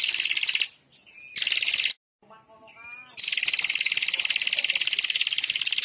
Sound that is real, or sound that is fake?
real